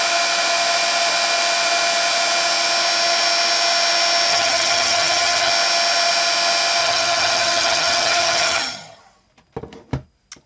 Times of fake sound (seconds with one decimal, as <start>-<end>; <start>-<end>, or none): 4.3-5.5; 6.8-9.0